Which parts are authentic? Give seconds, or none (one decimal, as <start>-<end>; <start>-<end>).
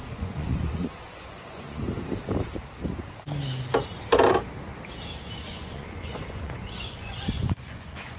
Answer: 1.8-5.4